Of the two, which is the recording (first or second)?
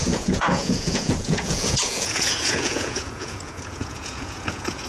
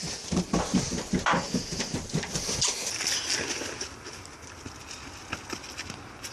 second